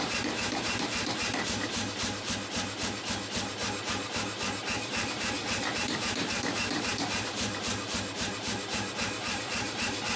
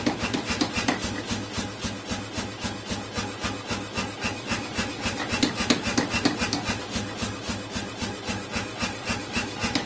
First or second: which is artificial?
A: first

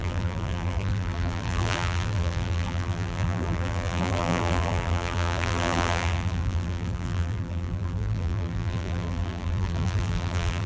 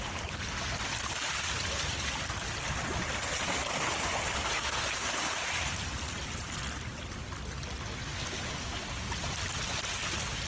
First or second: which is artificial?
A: first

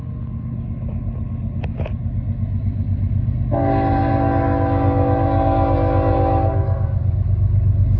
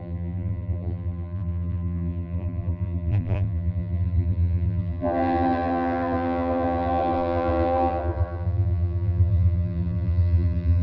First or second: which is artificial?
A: second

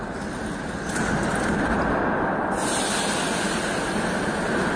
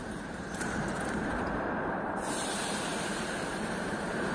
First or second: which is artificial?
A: second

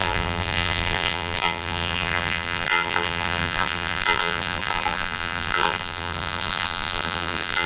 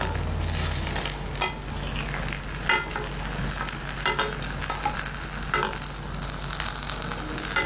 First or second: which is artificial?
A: first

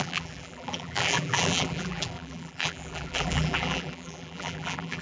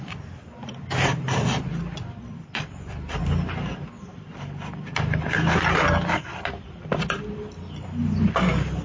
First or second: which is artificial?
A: first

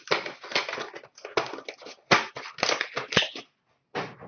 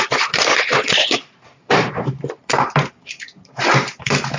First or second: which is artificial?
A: second